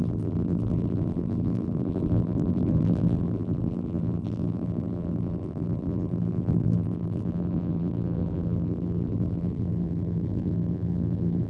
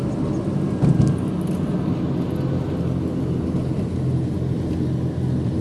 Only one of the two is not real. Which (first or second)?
first